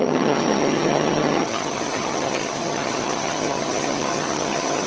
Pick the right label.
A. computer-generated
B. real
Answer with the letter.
A